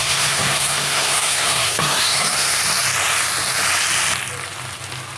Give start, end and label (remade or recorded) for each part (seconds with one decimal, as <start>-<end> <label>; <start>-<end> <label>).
0.0-2.6 remade; 2.6-5.2 recorded